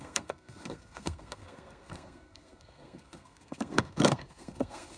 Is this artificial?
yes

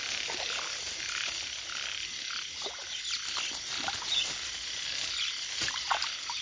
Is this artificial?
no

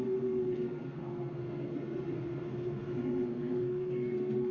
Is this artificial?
yes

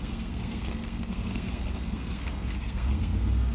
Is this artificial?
yes